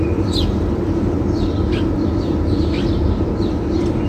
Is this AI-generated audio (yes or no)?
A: no